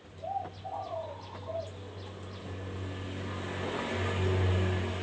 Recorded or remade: recorded